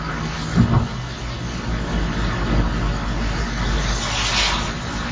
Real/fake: real